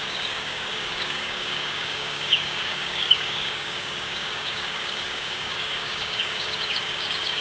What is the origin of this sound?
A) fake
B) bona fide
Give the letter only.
A